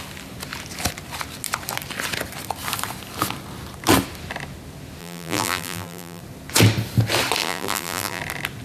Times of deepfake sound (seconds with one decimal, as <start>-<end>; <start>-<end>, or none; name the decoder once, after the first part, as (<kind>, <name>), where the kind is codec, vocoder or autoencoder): 5.0-6.2 (vocoder, BigVGAN v2); 7.4-8.2